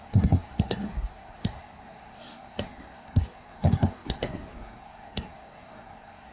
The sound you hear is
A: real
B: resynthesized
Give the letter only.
B